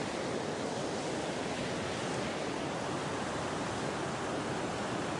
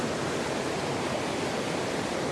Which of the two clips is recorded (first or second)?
first